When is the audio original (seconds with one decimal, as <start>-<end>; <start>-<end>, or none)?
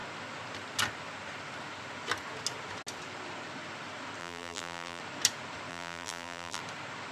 0.0-4.2; 5.0-5.7; 6.6-7.1